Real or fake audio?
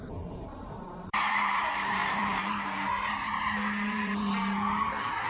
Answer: fake